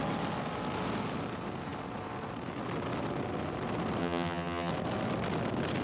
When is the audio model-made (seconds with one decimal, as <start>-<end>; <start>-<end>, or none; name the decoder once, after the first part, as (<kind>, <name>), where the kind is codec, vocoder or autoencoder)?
4.0-4.7 (vocoder, HiFi-GAN)